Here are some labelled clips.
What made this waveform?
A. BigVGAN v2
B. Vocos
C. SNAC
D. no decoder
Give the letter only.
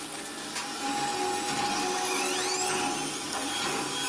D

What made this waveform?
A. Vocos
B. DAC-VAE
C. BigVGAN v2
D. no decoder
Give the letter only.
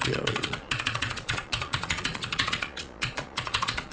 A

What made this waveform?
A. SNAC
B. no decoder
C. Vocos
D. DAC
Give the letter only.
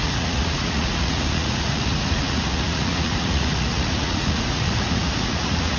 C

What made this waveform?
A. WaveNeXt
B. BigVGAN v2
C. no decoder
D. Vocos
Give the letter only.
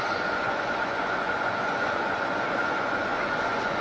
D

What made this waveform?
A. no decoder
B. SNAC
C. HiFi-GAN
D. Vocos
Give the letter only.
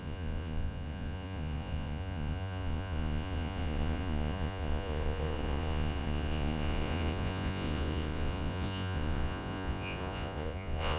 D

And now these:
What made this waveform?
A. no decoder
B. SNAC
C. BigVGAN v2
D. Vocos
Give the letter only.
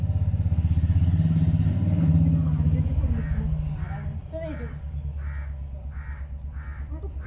A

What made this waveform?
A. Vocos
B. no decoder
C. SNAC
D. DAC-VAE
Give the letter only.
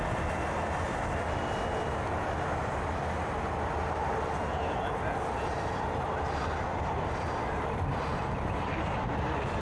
B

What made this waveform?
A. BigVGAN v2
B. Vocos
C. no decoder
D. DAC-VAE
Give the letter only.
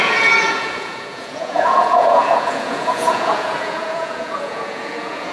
B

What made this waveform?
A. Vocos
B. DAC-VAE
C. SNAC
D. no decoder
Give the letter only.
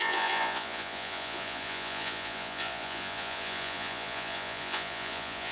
A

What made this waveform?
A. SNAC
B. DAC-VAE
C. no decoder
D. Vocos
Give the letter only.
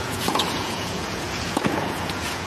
D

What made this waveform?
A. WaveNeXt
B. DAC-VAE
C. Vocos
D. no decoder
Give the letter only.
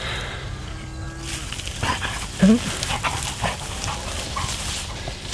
D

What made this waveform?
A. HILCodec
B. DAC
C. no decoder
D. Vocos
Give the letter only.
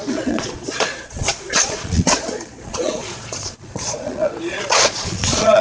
D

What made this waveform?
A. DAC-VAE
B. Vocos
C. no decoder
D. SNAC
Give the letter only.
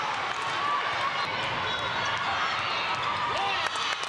C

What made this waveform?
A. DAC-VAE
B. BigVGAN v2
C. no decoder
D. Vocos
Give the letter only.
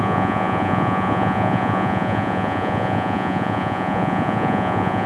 D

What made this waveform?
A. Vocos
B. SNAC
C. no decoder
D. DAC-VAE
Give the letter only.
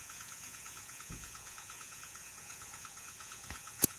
A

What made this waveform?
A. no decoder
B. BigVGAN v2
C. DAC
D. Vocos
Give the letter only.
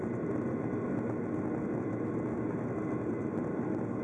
A